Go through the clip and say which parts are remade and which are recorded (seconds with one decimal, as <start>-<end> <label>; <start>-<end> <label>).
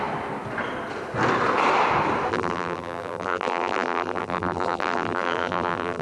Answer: 0.0-2.3 recorded; 2.3-6.0 remade